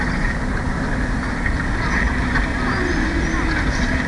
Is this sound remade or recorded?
recorded